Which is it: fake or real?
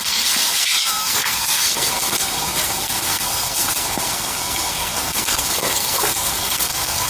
fake